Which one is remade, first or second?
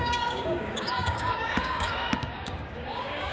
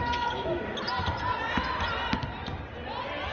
first